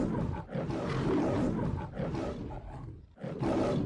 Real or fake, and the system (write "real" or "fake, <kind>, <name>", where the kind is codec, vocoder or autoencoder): real